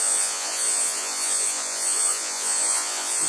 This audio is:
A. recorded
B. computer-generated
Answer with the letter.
B